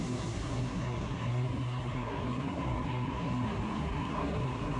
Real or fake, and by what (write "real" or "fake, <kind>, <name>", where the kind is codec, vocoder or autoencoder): fake, codec, SNAC